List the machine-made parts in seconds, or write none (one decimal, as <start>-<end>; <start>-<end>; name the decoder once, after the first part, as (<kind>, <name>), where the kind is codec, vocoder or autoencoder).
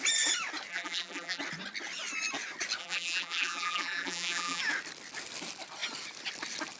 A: 0.7-1.4 (vocoder, BigVGAN v2); 2.8-4.6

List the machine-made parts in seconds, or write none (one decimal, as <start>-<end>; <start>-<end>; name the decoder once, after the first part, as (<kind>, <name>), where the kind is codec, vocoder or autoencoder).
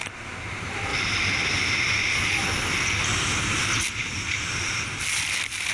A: 0.0-0.9 (vocoder, BigVGAN v2); 1.5-2.0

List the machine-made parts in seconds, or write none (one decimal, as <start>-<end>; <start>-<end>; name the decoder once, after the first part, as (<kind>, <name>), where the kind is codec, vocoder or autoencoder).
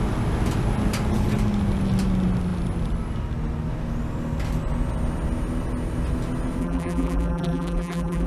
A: 6.6-8.3 (vocoder, BigVGAN v2)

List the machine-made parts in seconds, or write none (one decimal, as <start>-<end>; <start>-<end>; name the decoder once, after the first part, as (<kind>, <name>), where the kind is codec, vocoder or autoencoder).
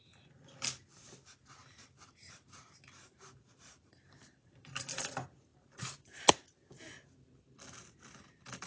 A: 1.6-4.9 (vocoder, BigVGAN v2)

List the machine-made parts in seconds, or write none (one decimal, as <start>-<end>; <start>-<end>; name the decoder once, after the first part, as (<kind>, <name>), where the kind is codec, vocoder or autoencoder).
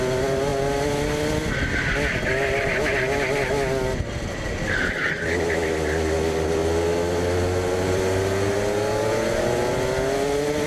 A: none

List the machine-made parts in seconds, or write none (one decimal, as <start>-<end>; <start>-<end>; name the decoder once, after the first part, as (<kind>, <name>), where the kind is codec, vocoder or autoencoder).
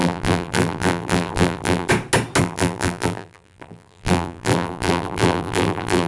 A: 0.0-1.9 (vocoder, BigVGAN v2); 2.4-6.1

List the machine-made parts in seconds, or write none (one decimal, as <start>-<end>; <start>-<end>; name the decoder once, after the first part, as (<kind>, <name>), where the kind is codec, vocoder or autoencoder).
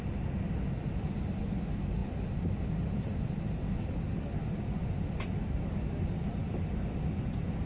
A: none